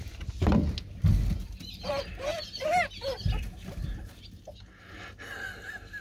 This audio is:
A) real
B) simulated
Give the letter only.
A